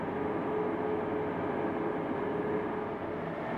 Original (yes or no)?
yes